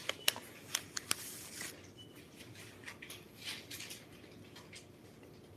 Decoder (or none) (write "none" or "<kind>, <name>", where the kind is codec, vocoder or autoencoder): none